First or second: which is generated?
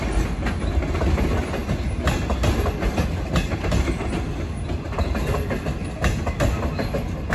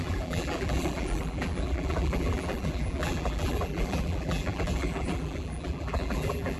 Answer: second